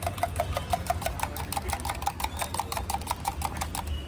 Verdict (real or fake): real